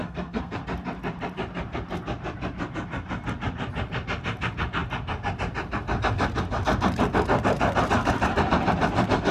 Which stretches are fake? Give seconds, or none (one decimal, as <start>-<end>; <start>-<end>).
0.0-0.6